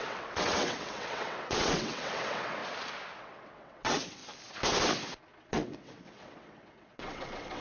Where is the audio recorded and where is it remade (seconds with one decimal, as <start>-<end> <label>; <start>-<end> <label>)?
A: 0.0-2.6 remade; 2.6-3.2 recorded; 3.2-4.2 remade; 4.2-5.5 recorded; 5.5-7.6 remade